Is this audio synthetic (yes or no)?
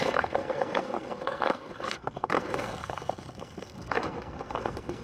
yes